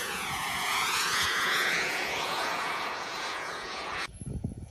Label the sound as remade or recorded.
remade